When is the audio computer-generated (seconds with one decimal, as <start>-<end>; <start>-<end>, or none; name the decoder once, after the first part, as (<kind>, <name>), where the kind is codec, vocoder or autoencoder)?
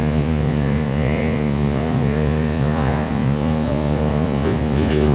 0.0-5.1 (vocoder, Vocos)